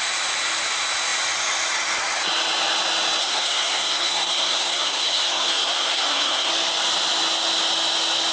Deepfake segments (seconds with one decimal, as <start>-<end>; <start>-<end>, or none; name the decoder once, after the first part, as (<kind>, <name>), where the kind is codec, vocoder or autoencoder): 3.2-6.5 (codec, SNAC)